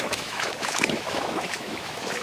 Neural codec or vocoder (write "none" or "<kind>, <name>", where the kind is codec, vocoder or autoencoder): autoencoder, DAC-VAE